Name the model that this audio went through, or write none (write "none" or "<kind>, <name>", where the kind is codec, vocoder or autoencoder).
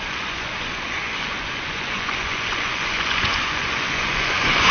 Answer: vocoder, Vocos